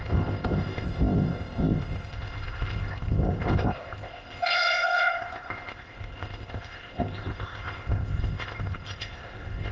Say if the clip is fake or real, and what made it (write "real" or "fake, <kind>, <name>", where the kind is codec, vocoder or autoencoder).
fake, codec, ZipCodec